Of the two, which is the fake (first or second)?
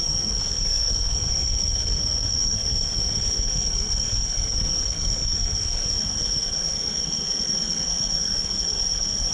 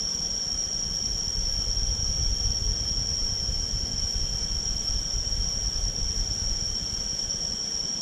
first